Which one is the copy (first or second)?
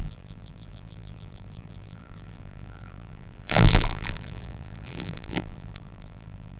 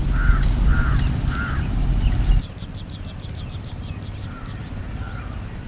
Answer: first